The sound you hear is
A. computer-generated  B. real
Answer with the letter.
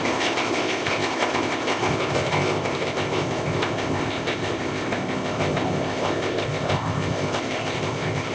A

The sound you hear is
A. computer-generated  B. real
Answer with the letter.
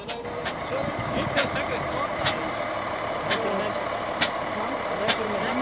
B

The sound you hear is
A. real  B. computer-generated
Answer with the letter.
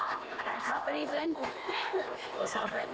B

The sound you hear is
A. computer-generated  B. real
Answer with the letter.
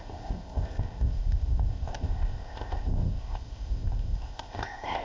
A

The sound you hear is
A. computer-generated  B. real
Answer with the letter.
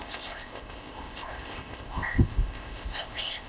A